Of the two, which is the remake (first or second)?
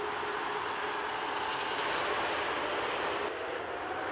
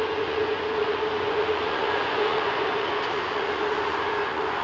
second